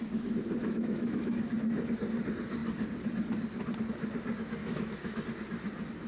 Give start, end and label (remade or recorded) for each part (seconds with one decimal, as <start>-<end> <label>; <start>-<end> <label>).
0.0-0.6 recorded; 0.6-1.4 remade; 1.4-4.6 recorded; 4.6-5.2 remade; 5.2-6.1 recorded